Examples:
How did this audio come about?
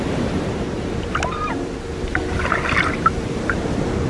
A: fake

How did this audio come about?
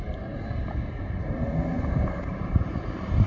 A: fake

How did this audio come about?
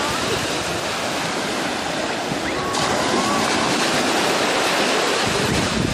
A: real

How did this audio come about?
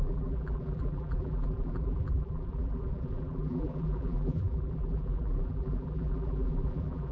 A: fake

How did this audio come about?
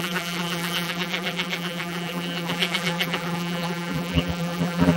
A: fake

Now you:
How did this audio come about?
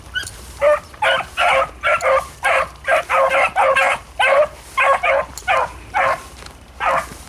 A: fake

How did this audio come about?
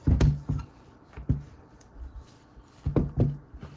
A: real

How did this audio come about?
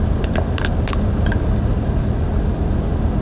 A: real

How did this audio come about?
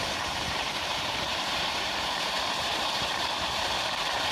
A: fake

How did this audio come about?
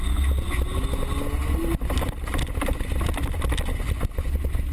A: real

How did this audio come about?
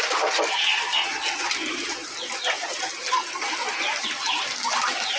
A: real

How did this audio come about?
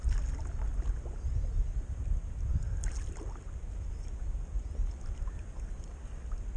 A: real